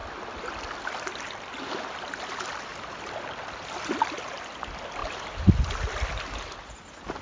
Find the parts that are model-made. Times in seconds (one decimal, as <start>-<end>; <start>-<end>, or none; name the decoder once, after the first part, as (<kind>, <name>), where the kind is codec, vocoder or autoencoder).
2.7-4.0 (vocoder, BigVGAN v2)